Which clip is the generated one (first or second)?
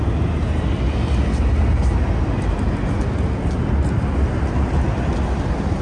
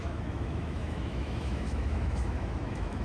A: second